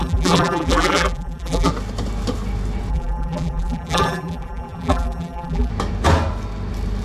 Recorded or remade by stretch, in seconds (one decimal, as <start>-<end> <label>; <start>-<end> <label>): 0.0-1.7 remade; 1.7-2.9 recorded; 2.9-5.7 remade; 5.7-7.0 recorded